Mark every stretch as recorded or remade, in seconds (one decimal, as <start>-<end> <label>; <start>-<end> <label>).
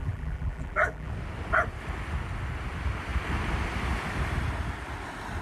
0.0-1.1 remade; 1.1-5.4 recorded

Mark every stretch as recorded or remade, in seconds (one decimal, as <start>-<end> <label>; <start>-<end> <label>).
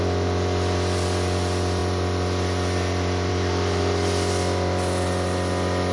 0.0-5.9 recorded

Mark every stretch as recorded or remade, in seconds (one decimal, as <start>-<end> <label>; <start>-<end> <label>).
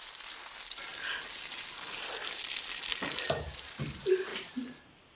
0.0-0.9 remade; 0.9-2.0 recorded; 2.0-5.2 remade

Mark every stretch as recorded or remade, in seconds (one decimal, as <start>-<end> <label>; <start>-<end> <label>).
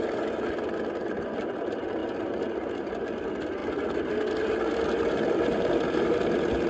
0.0-2.0 remade; 2.0-2.9 recorded; 2.9-3.6 remade; 3.6-5.1 recorded; 5.1-6.7 remade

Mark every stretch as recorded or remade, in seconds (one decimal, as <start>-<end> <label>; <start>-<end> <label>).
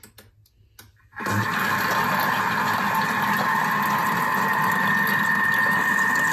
0.0-6.3 recorded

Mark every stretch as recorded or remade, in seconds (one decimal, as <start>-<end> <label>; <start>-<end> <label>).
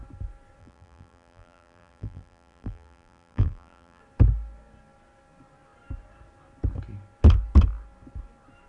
0.0-0.6 recorded; 0.6-4.0 remade; 4.0-8.7 recorded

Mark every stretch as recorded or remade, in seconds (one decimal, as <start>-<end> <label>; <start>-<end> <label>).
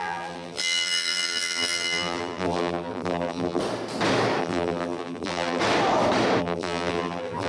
0.0-3.6 remade; 3.6-4.4 recorded; 4.4-5.6 remade; 5.6-6.4 recorded; 6.4-7.5 remade